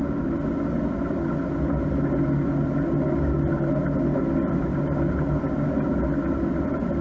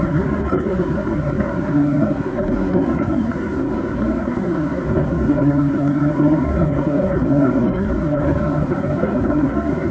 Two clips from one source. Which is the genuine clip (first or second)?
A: first